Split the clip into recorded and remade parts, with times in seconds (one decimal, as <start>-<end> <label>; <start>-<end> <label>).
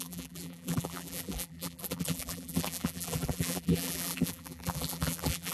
0.0-5.5 remade